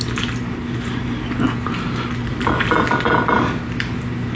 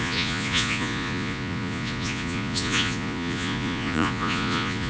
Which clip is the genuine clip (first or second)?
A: first